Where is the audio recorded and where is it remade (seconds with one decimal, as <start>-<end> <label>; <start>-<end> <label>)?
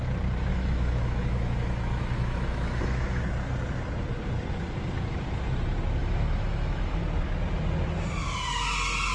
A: 0.0-0.5 recorded; 0.5-3.2 remade; 3.2-6.0 recorded; 6.0-7.0 remade; 7.0-9.1 recorded